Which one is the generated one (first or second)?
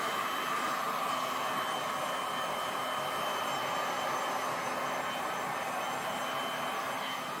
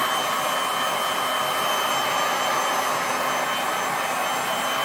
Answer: first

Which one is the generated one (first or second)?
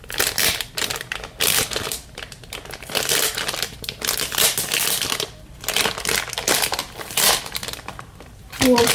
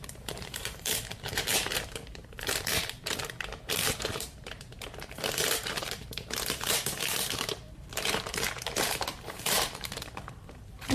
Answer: second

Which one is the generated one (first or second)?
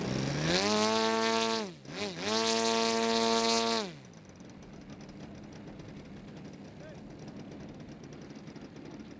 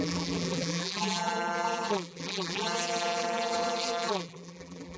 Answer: second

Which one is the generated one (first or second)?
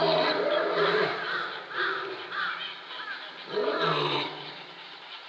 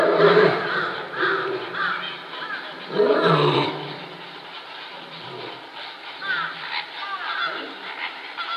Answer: second